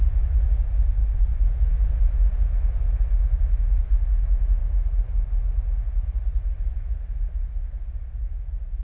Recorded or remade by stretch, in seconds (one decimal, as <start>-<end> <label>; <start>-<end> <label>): 0.0-8.8 recorded

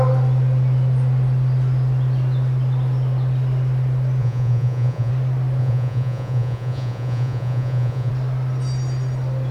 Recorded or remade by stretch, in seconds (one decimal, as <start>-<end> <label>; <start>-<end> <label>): 0.0-4.2 recorded; 4.2-5.1 remade; 5.1-5.6 recorded; 5.6-8.1 remade; 8.1-9.5 recorded

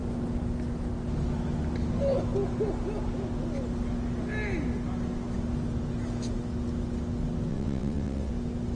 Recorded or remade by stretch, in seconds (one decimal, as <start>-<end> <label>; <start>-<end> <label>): 0.0-7.5 recorded; 7.5-8.3 remade; 8.3-8.8 recorded

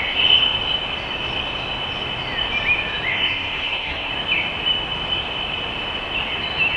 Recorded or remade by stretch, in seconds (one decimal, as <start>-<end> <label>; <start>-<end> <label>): 0.0-3.1 recorded; 3.1-4.1 remade; 4.1-6.8 recorded

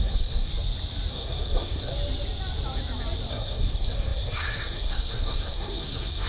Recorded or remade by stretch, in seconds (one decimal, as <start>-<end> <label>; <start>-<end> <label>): 0.0-0.5 remade; 0.5-1.1 recorded; 1.1-1.9 remade; 1.9-3.3 recorded; 3.3-6.3 remade

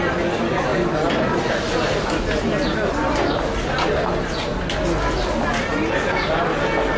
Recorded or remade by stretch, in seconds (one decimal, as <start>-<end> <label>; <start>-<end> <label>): 0.0-7.0 recorded

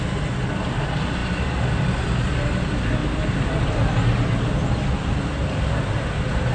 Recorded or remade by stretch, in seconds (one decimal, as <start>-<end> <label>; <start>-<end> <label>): 0.0-3.0 remade; 3.0-5.1 recorded; 5.1-6.5 remade